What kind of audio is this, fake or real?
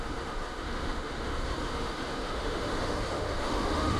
fake